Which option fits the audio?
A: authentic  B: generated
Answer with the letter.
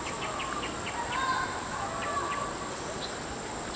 A